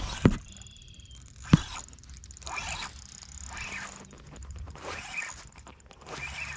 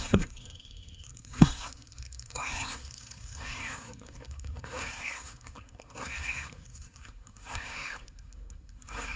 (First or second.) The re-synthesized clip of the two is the second